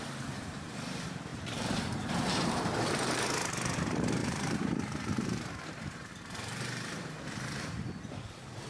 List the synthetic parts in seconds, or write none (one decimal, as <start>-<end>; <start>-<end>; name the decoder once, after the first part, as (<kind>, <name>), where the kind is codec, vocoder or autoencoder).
0.0-8.7 (vocoder, BigVGAN v2)